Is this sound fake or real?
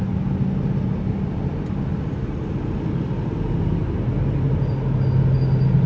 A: real